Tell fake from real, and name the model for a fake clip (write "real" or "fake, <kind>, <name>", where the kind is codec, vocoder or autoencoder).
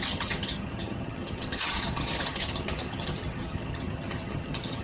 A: fake, vocoder, HiFi-GAN